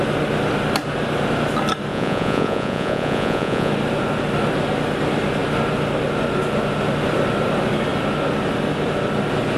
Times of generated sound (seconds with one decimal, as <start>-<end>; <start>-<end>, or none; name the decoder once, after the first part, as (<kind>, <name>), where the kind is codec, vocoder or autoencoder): 1.9-3.7 (vocoder, Vocos)